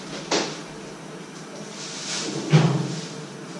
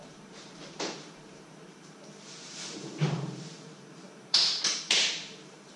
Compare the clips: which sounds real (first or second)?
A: first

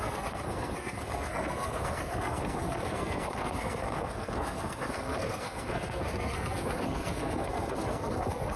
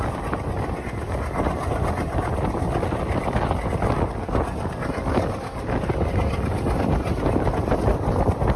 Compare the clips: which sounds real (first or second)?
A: second